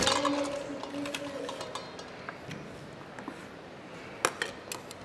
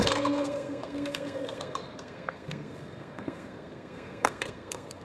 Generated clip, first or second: second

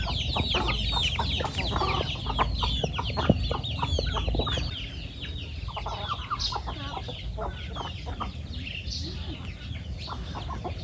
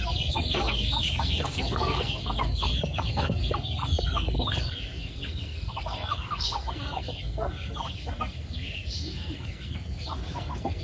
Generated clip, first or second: second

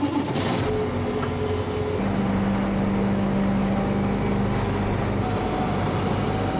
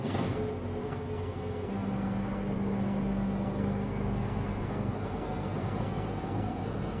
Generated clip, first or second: second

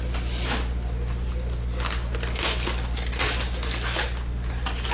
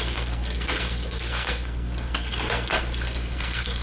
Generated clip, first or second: second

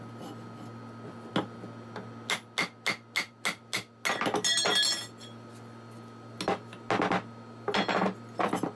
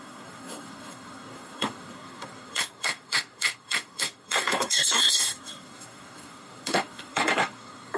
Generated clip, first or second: second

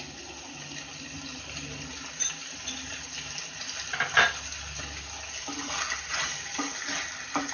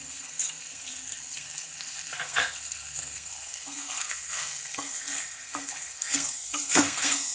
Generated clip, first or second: second